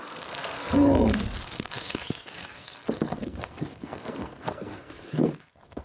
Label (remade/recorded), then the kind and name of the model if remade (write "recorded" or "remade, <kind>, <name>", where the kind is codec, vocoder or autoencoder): remade, codec, SNAC